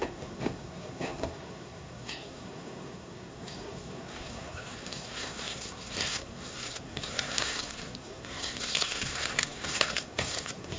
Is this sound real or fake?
fake